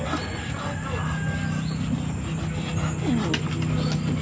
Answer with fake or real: real